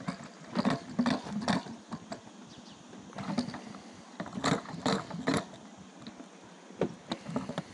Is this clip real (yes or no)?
yes